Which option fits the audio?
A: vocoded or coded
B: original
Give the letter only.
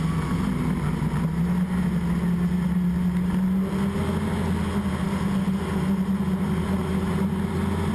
B